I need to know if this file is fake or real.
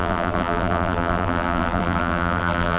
fake